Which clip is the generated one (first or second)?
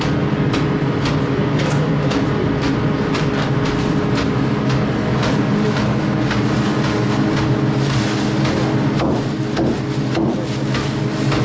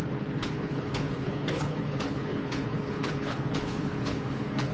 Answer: second